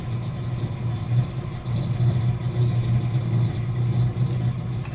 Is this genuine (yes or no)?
yes